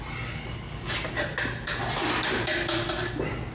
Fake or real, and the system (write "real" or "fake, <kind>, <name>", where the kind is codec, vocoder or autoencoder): real